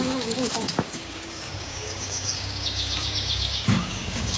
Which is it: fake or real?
fake